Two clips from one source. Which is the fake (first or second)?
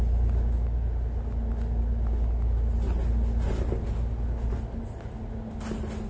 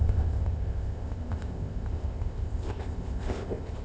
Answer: second